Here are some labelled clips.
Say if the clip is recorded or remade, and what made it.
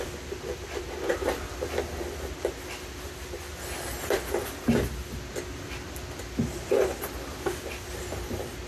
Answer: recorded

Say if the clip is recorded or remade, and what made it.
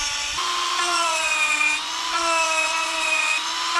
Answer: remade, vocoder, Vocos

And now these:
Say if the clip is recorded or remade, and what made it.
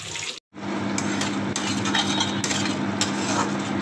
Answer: recorded